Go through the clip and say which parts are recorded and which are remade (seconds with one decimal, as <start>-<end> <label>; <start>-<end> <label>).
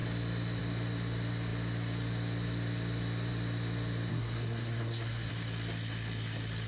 0.0-4.1 recorded; 4.1-5.3 remade; 5.3-6.7 recorded